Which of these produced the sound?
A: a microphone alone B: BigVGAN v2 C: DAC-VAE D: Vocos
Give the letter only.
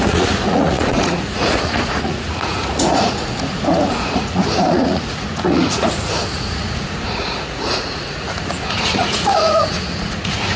D